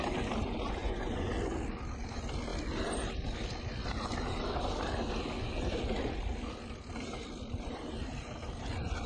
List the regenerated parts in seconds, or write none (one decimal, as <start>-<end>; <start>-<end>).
0.8-1.3